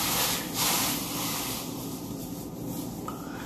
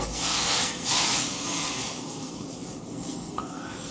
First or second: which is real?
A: first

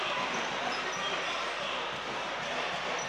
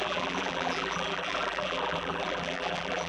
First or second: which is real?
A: first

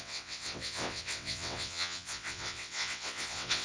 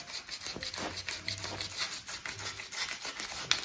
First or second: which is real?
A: second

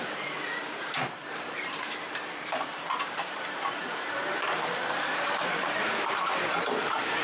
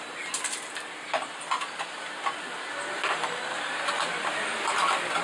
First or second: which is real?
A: second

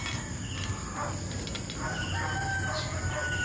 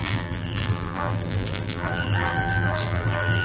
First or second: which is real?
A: first